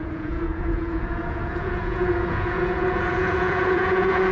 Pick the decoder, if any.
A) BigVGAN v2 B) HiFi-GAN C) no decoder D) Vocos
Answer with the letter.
D